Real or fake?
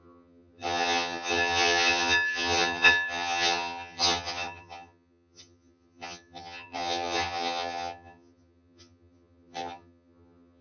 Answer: fake